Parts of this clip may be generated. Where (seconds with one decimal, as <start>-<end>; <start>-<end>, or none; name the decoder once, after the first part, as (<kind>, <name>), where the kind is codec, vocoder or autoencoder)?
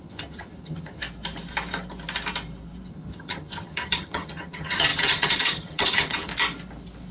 0.0-1.0 (vocoder, HiFi-GAN); 2.9-6.3